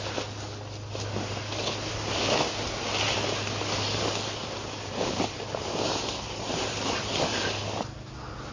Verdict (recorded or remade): recorded